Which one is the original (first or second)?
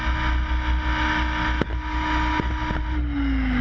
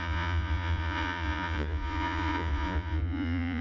first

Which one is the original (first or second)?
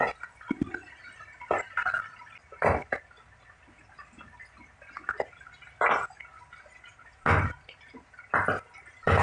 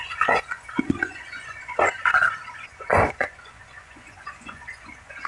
first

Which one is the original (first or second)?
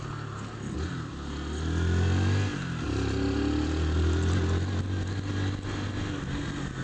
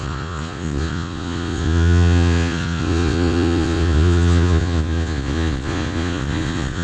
first